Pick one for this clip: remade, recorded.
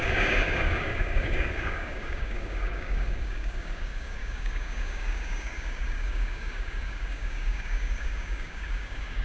remade